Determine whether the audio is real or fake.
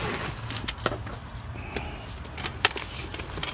real